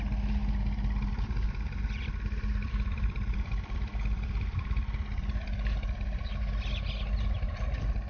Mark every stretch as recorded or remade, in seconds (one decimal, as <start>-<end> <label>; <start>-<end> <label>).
0.0-2.6 recorded; 2.6-6.3 remade; 6.3-8.1 recorded